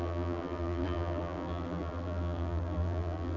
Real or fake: fake